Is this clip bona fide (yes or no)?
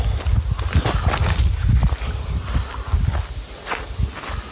yes